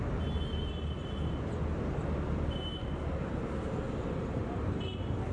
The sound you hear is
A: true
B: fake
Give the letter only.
A